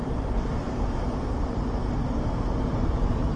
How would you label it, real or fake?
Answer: fake